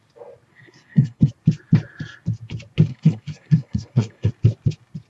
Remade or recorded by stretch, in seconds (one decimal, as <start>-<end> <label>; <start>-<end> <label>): 0.0-0.5 recorded; 0.5-1.3 remade; 1.3-2.9 recorded; 2.9-4.3 remade; 4.3-5.1 recorded